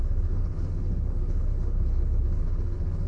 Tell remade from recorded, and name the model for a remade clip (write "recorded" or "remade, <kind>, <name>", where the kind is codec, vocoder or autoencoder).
remade, codec, HILCodec